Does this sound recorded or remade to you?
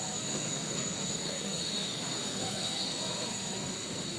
remade